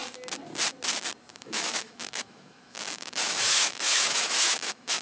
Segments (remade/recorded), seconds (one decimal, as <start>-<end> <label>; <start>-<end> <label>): 0.0-1.3 recorded; 1.3-5.0 remade